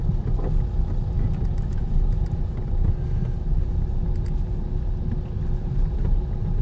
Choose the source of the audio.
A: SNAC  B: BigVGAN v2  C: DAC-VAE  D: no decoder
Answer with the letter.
D